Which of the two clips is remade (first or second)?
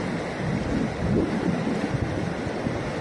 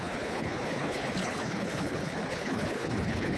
second